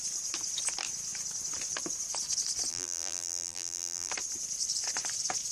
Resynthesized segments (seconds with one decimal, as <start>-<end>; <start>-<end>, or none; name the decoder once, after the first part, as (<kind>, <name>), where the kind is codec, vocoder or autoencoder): 2.7-4.1 (vocoder, BigVGAN v2)